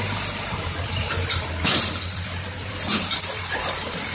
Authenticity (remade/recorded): remade